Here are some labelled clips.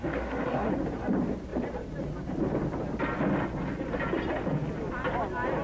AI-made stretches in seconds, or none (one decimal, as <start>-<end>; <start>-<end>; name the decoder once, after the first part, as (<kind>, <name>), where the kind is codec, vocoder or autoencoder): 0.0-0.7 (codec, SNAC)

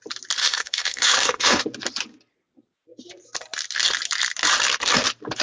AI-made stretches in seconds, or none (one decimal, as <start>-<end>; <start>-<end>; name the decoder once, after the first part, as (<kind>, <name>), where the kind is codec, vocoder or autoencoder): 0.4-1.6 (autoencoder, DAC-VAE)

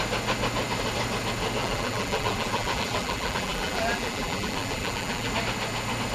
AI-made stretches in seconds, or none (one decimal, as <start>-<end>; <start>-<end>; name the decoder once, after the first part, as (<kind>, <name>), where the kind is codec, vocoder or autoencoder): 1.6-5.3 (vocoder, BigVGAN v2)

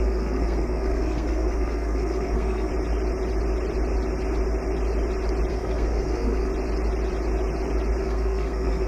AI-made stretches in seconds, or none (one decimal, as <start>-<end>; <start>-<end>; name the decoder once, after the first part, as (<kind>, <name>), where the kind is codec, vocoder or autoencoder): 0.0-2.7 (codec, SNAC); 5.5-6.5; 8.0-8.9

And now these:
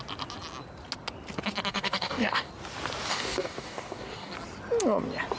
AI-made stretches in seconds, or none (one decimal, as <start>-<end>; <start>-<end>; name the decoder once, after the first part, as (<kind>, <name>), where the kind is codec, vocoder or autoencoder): 1.7-2.5 (codec, DAC); 3.1-4.3

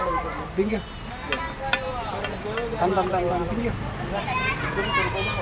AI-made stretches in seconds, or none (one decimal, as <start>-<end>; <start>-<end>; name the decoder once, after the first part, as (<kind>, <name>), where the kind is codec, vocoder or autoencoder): none